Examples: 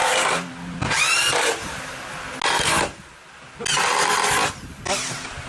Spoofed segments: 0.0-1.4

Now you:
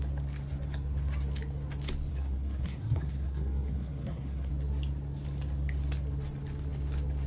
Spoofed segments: 2.1-4.5